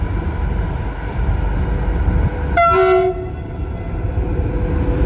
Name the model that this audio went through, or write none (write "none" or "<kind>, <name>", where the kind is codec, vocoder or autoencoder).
none